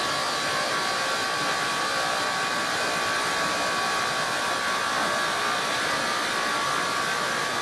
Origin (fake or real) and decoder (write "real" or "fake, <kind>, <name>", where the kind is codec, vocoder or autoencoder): fake, vocoder, BigVGAN v2